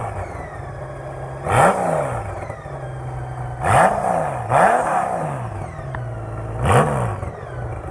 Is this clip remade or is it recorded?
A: recorded